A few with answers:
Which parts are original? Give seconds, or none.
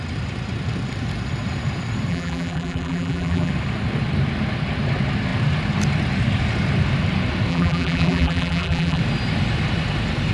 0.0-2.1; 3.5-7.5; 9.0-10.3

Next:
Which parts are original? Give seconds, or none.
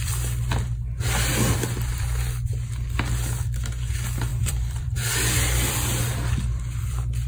0.0-4.3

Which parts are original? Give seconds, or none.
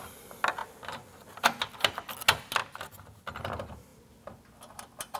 0.0-5.2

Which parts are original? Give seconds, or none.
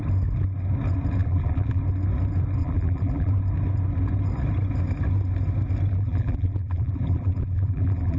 0.0-1.2; 1.8-2.6; 3.3-5.9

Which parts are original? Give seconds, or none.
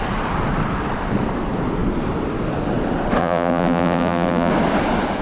0.0-3.2; 4.5-5.2